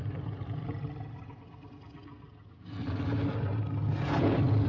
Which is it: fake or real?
real